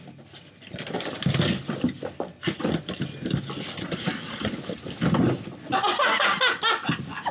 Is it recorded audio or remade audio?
recorded